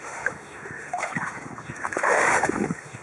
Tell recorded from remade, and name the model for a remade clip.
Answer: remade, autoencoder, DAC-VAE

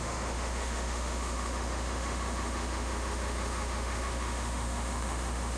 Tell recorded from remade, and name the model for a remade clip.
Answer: remade, autoencoder, DAC-VAE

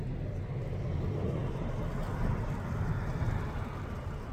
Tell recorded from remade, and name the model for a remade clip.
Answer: recorded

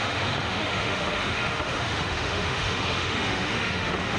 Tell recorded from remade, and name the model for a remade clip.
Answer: remade, autoencoder, DAC-VAE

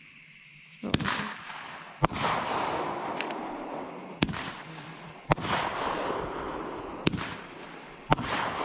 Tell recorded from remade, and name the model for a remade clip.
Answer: recorded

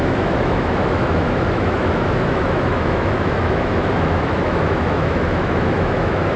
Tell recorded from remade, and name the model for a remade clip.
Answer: remade, autoencoder, DAC-VAE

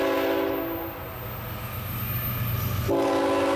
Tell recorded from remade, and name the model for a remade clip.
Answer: recorded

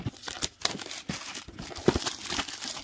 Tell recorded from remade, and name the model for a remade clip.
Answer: recorded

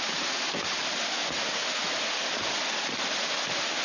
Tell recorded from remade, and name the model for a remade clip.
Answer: recorded